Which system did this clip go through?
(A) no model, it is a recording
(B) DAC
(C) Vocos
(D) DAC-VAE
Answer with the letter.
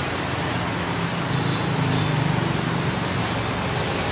A